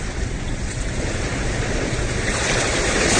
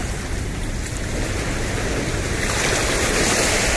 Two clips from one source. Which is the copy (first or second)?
first